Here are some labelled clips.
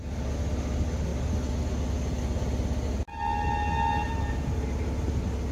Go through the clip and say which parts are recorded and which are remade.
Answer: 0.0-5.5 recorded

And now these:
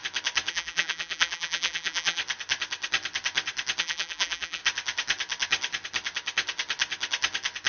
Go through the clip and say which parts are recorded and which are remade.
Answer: 0.0-0.5 recorded; 0.5-2.2 remade; 2.2-3.8 recorded; 3.8-4.6 remade; 4.6-7.7 recorded

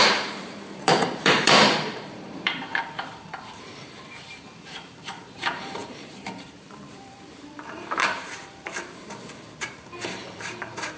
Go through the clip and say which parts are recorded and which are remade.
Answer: 0.0-11.0 remade